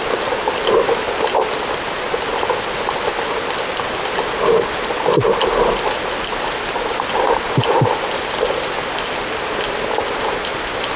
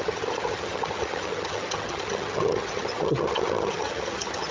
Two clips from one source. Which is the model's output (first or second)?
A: second